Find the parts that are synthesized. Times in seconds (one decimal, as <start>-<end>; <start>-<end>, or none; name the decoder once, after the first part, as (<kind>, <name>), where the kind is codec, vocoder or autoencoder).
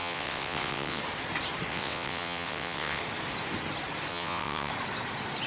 0.0-1.0 (vocoder, WaveNeXt); 1.7-3.0; 4.1-4.7